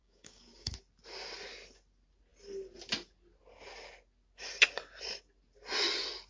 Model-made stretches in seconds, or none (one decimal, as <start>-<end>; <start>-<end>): 0.0-0.7